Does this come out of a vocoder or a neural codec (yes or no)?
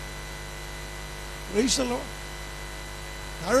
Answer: no